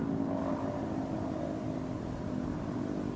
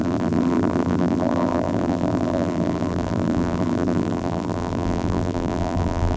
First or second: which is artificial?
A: second